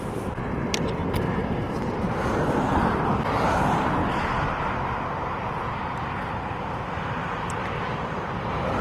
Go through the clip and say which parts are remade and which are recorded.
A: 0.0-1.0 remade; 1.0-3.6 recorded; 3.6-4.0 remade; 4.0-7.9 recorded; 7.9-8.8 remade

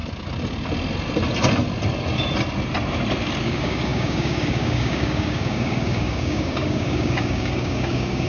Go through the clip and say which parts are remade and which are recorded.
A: 0.0-3.4 recorded; 3.4-8.3 remade

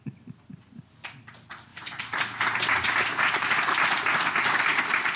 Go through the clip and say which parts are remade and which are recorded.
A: 0.0-5.2 recorded

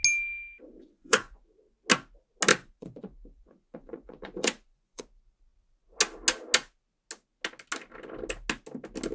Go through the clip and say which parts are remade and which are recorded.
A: 0.0-0.8 recorded; 0.8-1.4 remade; 1.4-2.5 recorded; 2.5-5.0 remade; 5.0-9.1 recorded

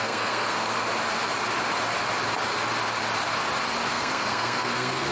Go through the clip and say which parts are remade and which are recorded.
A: 0.0-0.8 remade; 0.8-3.9 recorded; 3.9-5.1 remade

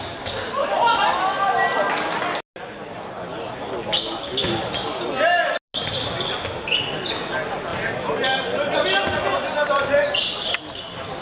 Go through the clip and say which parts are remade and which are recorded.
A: 0.0-11.2 recorded

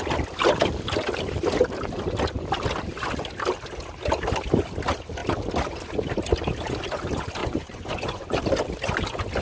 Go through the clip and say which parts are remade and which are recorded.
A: 0.0-7.4 recorded; 7.4-8.4 remade; 8.4-9.4 recorded

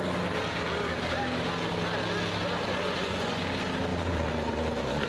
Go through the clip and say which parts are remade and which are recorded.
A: 0.0-2.7 recorded; 2.7-3.4 remade; 3.4-3.9 recorded; 3.9-5.1 remade